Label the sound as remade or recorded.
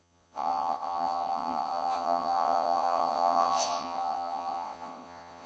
remade